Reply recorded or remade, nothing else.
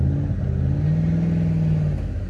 recorded